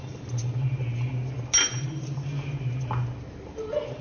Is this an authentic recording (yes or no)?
yes